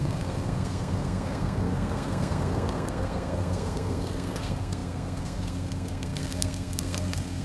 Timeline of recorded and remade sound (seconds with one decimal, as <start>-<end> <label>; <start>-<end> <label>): 0.0-7.4 remade